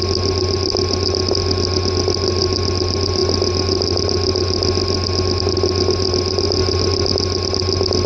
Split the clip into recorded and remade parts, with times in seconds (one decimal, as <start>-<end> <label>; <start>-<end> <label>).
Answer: 0.0-8.1 recorded